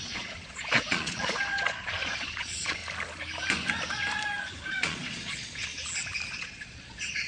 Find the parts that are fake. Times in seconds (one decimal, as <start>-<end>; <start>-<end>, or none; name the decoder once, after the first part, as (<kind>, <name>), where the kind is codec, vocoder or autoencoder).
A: 0.0-2.8 (vocoder, Vocos); 4.7-5.7; 6.3-7.3